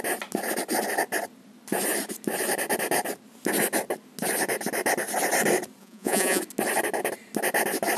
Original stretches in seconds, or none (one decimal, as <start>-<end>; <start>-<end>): 0.0-5.8; 6.4-8.0